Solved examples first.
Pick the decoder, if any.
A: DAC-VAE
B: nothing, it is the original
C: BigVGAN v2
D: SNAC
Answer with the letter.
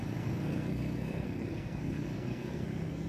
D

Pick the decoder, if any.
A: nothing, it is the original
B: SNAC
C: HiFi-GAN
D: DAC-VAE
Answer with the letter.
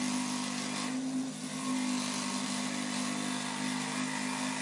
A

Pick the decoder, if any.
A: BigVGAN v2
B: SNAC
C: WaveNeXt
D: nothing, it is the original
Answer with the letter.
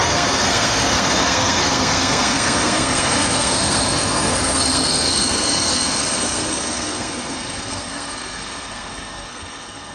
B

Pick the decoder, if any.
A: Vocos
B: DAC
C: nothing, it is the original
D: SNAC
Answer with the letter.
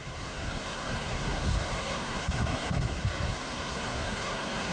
D